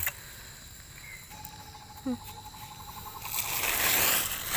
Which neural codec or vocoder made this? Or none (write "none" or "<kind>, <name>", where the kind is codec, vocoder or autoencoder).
none